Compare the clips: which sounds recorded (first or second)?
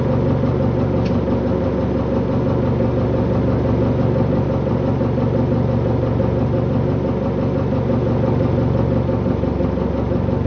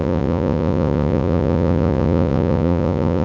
first